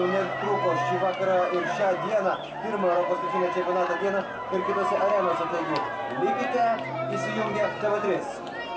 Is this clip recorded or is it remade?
recorded